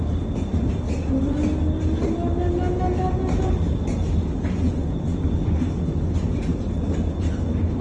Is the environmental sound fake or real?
real